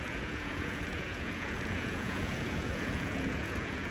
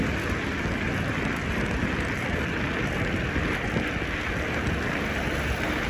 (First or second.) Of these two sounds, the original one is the second